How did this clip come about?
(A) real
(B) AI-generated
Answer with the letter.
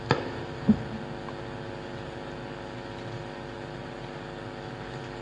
A